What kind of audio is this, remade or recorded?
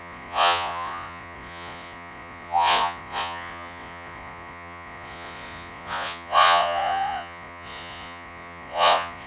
remade